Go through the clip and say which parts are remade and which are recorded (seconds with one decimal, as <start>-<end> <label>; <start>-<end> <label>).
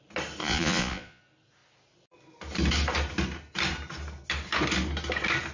0.0-0.4 recorded; 0.4-1.2 remade; 1.2-5.5 recorded